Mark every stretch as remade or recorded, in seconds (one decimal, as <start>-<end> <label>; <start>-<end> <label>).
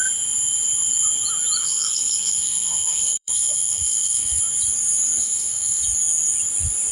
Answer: 0.0-1.6 recorded; 1.6-4.4 remade; 4.4-5.2 recorded; 5.2-5.8 remade; 5.8-6.9 recorded